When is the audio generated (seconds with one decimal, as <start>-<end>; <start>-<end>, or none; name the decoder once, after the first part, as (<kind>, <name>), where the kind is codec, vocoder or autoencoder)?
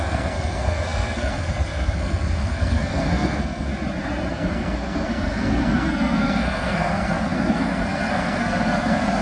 0.0-3.7 (codec, SNAC); 4.3-9.2